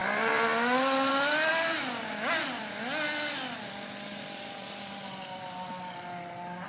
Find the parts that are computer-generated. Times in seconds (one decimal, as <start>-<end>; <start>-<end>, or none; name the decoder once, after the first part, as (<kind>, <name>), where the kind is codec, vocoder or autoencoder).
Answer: none